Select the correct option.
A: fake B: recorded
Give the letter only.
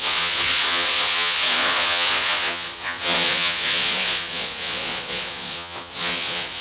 A